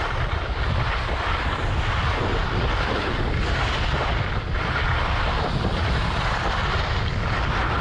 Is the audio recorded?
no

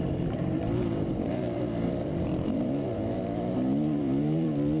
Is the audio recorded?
no